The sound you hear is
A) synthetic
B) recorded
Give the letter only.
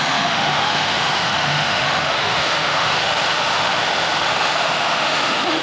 A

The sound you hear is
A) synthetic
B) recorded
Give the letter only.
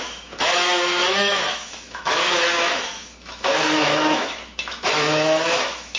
A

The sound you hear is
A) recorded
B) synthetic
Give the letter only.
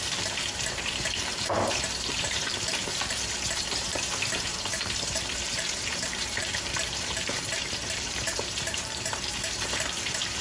B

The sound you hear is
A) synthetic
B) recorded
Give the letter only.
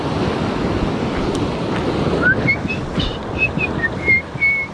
B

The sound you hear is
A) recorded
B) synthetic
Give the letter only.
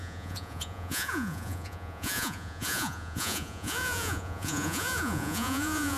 B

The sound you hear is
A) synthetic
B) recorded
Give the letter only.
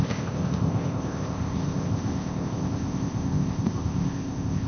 A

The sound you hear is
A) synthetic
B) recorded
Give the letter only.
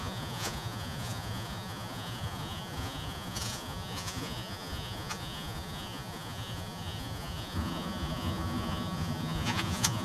A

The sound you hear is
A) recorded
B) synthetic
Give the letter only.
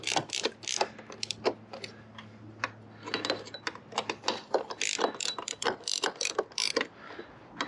A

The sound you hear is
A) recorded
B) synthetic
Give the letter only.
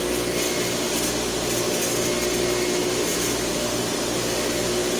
A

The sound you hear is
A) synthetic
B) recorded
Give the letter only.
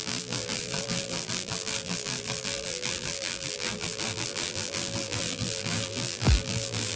A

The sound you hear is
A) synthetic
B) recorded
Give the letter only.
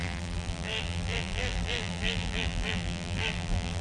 A